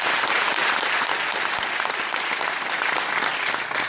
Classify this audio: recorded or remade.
recorded